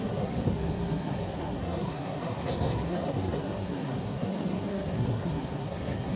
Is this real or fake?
fake